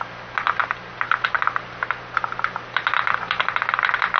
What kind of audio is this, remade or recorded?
recorded